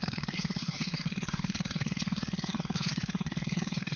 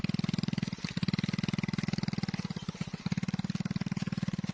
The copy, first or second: first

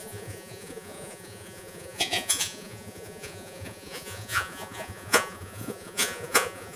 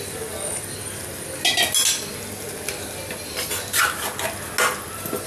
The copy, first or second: first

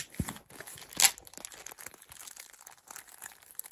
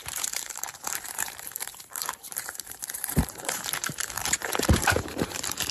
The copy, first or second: second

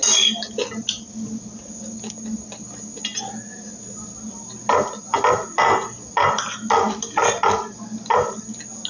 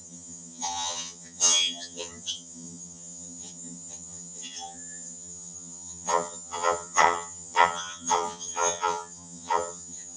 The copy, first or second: second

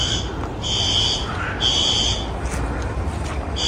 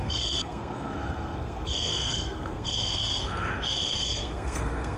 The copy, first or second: second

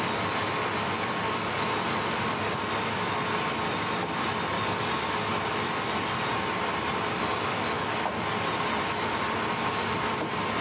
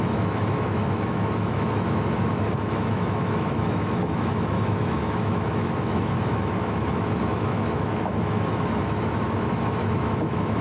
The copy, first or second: second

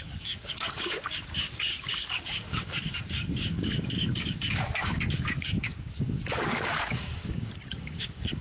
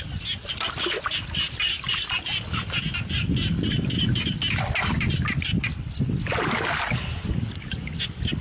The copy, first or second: first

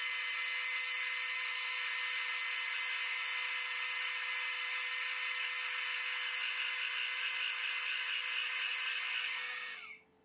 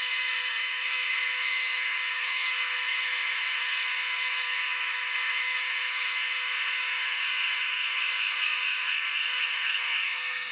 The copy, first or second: second